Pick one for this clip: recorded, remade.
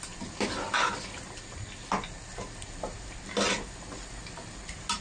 recorded